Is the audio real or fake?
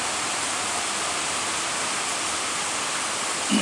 real